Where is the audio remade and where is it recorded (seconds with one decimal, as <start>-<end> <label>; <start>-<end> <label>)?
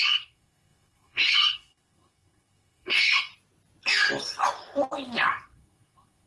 0.0-3.3 remade; 3.3-5.3 recorded; 5.3-6.3 remade